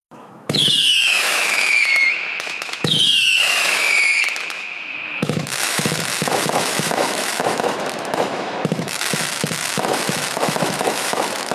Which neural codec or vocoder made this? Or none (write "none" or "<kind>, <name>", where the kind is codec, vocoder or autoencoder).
autoencoder, DAC-VAE